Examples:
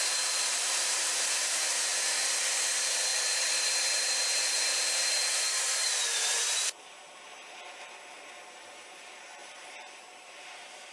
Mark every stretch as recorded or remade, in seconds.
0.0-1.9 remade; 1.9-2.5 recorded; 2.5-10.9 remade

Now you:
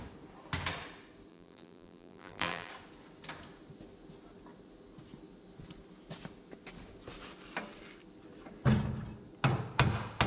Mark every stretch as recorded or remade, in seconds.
0.0-1.3 recorded; 1.3-2.7 remade; 2.7-10.3 recorded

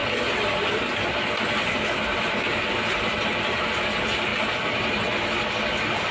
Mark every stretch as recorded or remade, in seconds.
0.0-2.1 recorded; 2.1-3.7 remade; 3.7-4.3 recorded; 4.3-5.1 remade; 5.1-6.1 recorded

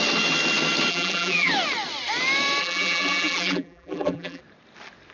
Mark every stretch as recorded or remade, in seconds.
0.0-0.9 recorded; 0.9-1.5 remade; 1.5-2.6 recorded; 2.6-4.4 remade; 4.4-5.1 recorded

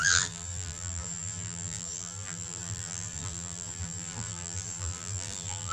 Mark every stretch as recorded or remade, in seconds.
0.0-5.7 remade